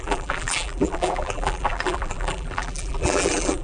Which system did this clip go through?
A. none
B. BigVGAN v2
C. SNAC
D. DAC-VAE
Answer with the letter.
B